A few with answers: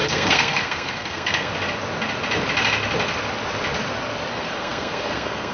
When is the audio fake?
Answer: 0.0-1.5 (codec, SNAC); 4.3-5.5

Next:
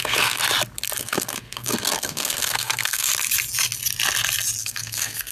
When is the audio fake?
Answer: 0.0-0.4 (codec, SNAC); 1.0-3.1; 4.6-5.3

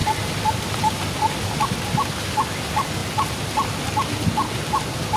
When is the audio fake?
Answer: none

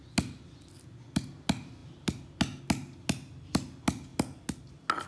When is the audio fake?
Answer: none

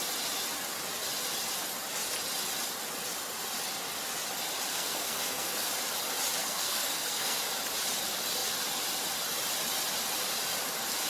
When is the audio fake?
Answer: 4.7-5.7 (codec, SNAC); 6.4-7.4

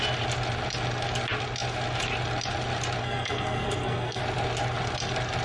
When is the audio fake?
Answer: 3.0-4.2 (codec, SNAC)